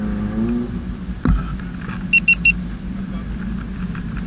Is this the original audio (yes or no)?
yes